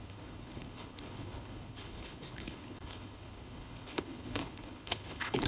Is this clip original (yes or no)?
no